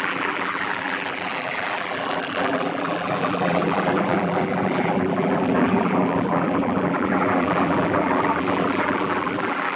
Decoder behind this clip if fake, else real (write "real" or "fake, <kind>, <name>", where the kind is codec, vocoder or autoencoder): fake, vocoder, BigVGAN v2